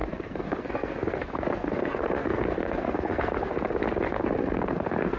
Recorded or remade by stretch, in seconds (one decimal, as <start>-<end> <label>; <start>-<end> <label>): 0.0-3.5 remade; 3.5-4.1 recorded; 4.1-5.2 remade